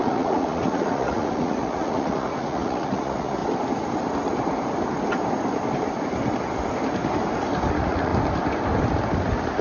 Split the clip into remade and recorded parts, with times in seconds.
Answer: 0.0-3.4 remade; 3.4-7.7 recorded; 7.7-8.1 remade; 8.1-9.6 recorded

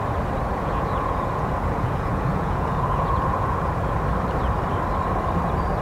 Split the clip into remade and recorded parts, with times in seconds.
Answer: 0.0-0.5 recorded; 0.5-3.7 remade; 3.7-5.8 recorded